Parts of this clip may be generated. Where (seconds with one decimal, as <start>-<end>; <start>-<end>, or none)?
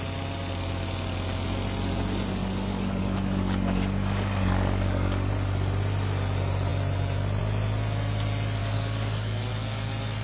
2.4-5.3; 8.6-9.5